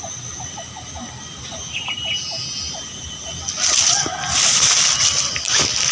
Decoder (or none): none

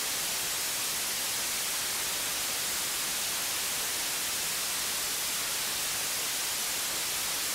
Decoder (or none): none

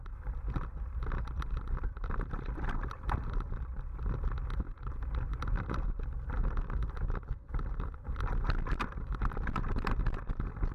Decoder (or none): vocoder, BigVGAN v2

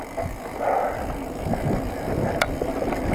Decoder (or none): none